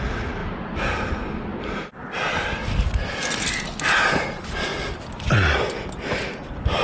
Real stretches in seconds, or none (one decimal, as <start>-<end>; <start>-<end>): 0.0-0.4; 1.1-6.8

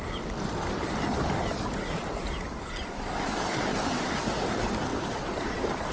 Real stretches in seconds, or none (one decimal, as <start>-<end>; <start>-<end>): 0.0-4.9

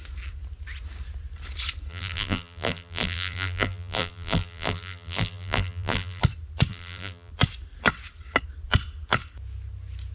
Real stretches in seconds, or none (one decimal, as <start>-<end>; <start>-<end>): 0.0-1.9; 6.2-6.7; 7.3-10.1

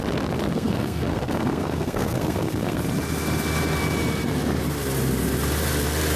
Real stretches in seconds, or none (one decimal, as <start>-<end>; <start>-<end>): 0.0-0.5; 2.8-6.2